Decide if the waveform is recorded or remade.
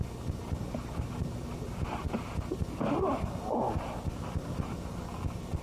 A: recorded